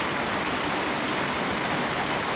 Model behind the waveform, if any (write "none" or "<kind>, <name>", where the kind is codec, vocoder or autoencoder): none